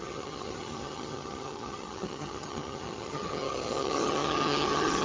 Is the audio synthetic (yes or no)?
yes